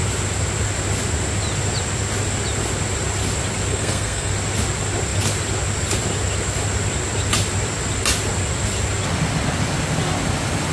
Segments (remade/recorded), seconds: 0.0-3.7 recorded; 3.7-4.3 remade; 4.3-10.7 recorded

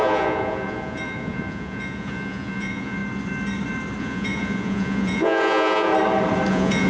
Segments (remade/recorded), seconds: 0.0-3.0 remade; 3.0-4.0 recorded; 4.0-5.9 remade; 5.9-6.5 recorded; 6.5-6.9 remade

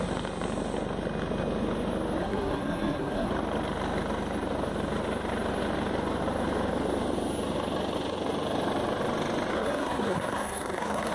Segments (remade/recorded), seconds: 0.0-2.2 recorded; 2.2-3.3 remade; 3.3-9.5 recorded; 9.5-11.1 remade

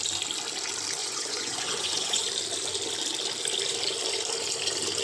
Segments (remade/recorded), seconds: 0.0-1.0 recorded; 1.0-2.2 remade; 2.2-5.0 recorded